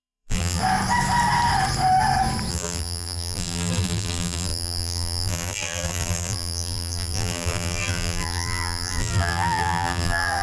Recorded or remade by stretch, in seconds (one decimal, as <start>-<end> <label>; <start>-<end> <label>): 0.0-0.6 remade; 0.6-2.5 recorded; 2.5-10.4 remade

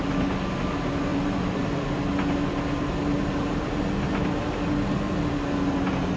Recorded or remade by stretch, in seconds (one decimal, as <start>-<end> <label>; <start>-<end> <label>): 0.0-1.1 recorded; 1.1-1.7 remade; 1.7-3.2 recorded; 3.2-3.8 remade; 3.8-6.2 recorded

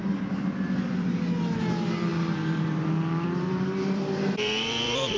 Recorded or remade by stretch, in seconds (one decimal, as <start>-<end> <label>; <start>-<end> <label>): 0.0-2.1 recorded; 2.1-5.2 remade

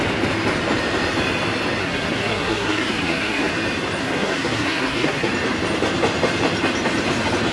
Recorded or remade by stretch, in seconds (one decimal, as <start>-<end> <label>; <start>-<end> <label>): 0.0-1.8 recorded; 1.8-3.5 remade; 3.5-4.0 recorded; 4.0-5.3 remade; 5.3-7.5 recorded

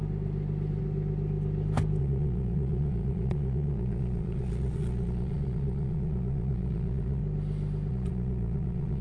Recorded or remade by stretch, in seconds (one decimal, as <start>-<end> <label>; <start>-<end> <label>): 0.0-2.0 recorded; 2.0-7.2 remade; 7.2-7.9 recorded; 7.9-9.0 remade

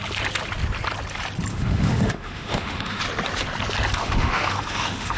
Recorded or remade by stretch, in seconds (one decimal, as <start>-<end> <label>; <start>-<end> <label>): 0.0-1.5 recorded; 1.5-3.0 remade; 3.0-4.0 recorded; 4.0-5.2 remade

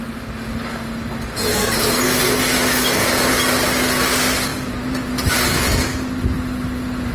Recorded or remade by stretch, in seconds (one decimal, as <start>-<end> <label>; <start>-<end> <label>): 0.0-1.5 recorded; 1.5-2.0 remade; 2.0-7.1 recorded